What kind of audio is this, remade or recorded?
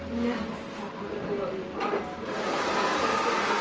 recorded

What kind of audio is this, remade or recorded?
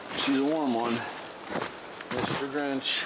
recorded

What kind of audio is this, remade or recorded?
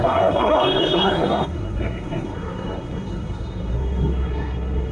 remade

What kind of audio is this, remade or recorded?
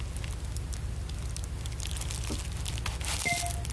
recorded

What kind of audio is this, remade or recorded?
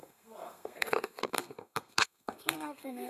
remade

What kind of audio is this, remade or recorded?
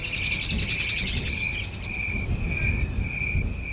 recorded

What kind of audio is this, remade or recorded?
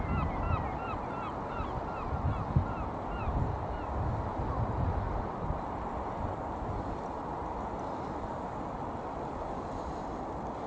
recorded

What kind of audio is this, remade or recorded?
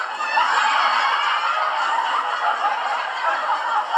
recorded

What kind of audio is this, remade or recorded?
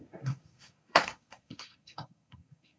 remade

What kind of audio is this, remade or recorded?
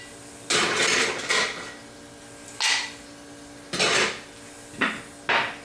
recorded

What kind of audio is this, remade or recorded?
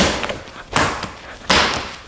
recorded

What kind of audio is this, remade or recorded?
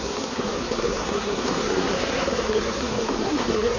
remade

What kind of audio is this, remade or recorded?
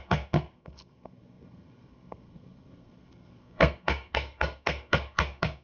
remade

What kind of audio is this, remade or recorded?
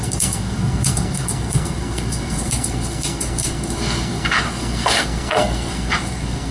remade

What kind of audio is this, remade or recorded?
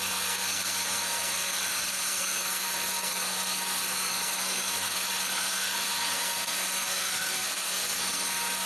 remade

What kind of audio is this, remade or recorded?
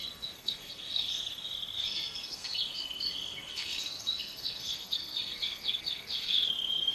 remade